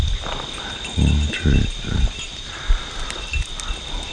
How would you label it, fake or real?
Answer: real